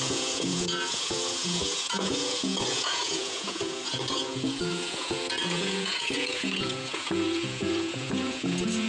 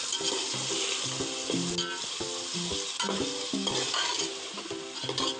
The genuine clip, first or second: second